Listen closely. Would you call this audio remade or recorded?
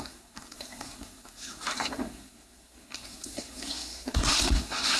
remade